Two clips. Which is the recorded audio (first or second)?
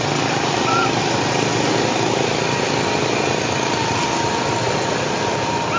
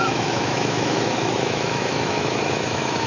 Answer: first